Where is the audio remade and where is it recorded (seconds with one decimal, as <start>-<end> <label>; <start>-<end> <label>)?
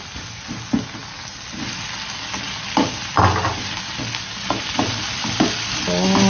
0.0-6.3 recorded